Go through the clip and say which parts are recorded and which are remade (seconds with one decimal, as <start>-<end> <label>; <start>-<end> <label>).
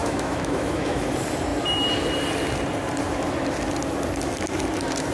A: 0.0-1.1 remade; 1.1-5.1 recorded